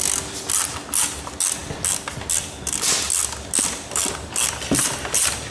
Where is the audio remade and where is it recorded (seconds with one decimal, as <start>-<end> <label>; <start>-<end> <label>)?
0.0-5.5 recorded